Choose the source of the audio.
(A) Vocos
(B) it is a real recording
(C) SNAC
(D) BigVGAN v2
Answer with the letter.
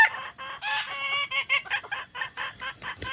D